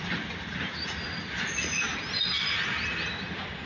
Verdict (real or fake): real